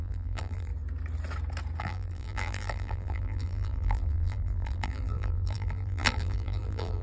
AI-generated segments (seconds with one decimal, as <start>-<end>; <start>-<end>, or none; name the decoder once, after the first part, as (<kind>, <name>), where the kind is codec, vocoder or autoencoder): 0.0-0.7 (vocoder, BigVGAN v2); 1.8-7.0